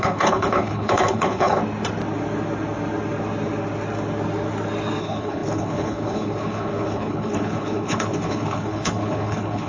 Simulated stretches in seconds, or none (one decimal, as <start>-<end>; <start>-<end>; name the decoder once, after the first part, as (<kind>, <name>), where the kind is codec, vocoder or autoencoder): 0.0-1.6 (codec, HILCodec); 5.0-9.7